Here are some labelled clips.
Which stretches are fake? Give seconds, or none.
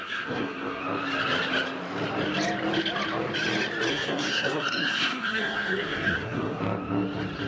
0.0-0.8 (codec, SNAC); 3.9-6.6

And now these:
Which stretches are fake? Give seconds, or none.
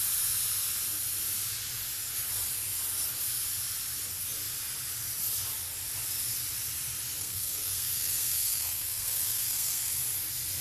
7.2-9.9 (codec, SNAC)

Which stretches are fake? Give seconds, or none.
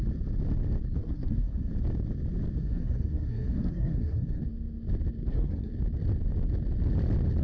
1.0-1.7 (codec, SNAC); 2.6-4.4; 5.3-5.7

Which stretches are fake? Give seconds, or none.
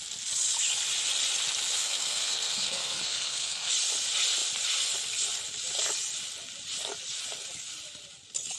1.8-3.7 (codec, SNAC)